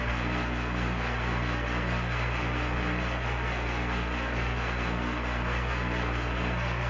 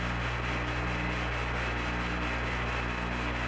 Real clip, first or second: second